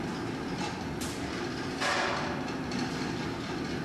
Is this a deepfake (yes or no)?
no